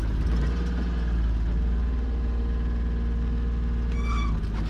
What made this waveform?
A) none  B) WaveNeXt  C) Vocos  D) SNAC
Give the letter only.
A